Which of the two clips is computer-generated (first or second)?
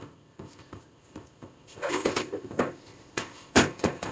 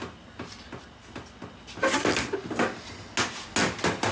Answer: first